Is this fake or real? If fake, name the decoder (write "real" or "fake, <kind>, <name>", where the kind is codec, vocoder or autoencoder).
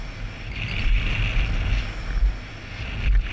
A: real